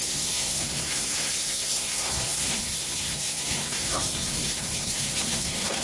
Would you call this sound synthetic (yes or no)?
yes